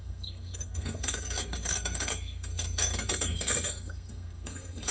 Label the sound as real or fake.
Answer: fake